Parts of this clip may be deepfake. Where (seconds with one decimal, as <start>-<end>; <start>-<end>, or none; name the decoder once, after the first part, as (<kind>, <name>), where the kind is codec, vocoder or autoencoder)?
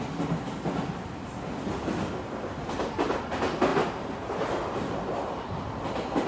3.7-5.6 (vocoder, BigVGAN v2)